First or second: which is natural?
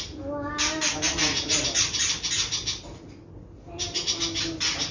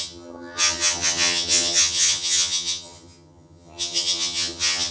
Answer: first